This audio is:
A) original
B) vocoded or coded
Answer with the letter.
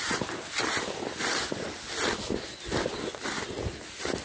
A